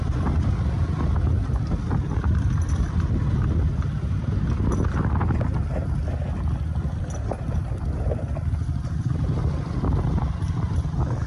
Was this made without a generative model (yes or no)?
yes